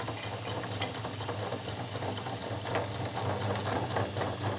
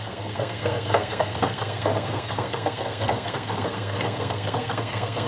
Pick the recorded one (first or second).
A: first